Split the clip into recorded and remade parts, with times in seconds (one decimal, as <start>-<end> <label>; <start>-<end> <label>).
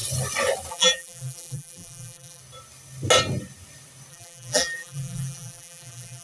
0.0-0.7 recorded; 0.7-2.4 remade; 2.4-4.1 recorded; 4.1-6.2 remade